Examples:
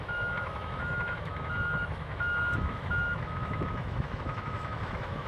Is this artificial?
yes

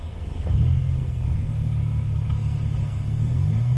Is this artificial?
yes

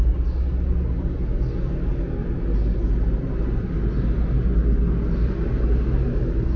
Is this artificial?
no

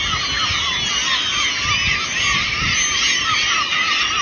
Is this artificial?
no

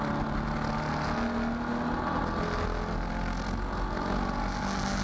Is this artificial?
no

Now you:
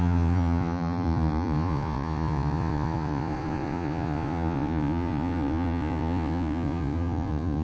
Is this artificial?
yes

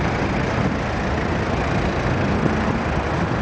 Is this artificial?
no